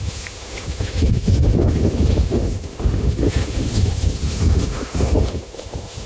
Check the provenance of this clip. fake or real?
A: fake